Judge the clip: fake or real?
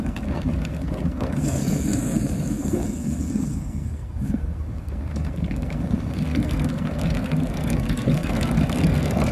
fake